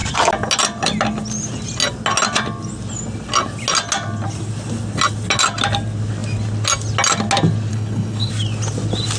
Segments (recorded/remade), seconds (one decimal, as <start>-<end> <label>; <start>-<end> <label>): 0.0-7.7 recorded; 7.7-8.3 remade; 8.3-9.2 recorded